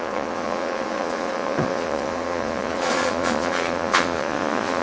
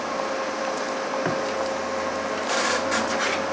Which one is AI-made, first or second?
first